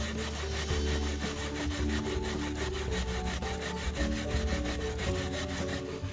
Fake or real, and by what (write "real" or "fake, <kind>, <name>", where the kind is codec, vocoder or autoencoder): real